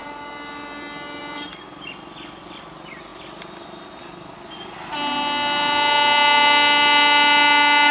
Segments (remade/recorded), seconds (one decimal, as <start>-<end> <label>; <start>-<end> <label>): 0.0-7.9 recorded